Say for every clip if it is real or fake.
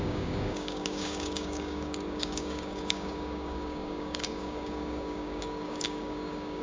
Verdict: fake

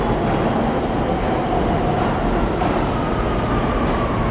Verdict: real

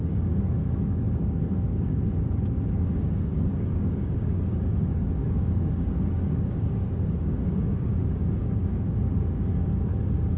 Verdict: fake